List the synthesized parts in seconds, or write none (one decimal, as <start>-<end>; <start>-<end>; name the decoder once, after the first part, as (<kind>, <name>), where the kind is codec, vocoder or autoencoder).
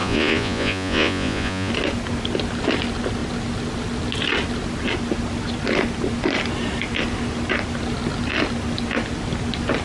0.0-1.7 (vocoder, Vocos)